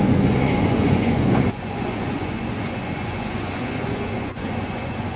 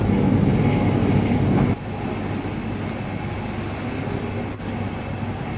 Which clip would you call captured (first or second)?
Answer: second